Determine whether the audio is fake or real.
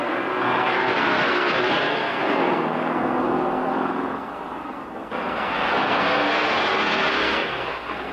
fake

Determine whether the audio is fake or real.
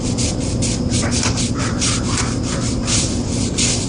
fake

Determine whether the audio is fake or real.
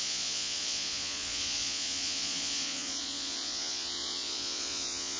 fake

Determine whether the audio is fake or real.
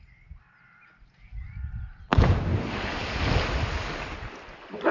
real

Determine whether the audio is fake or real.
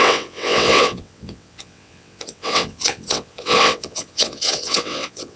fake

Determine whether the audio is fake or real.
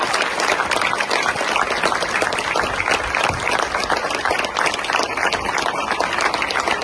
real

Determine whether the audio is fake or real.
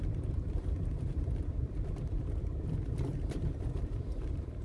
fake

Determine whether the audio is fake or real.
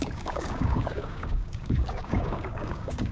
fake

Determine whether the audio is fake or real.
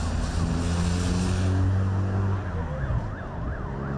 real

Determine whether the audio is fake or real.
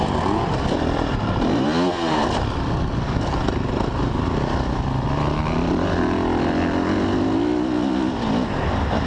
real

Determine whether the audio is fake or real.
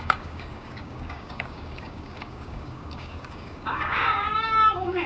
fake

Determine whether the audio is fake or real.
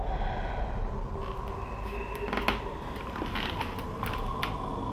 real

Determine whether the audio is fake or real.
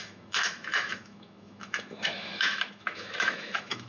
fake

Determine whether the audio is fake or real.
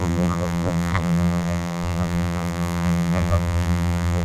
fake